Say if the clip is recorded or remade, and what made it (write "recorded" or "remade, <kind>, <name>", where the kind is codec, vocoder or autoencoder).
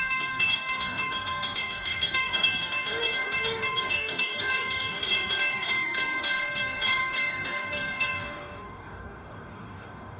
remade, codec, DAC